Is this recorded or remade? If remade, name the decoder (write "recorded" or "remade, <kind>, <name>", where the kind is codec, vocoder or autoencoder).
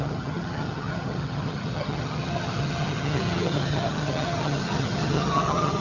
remade, vocoder, HiFi-GAN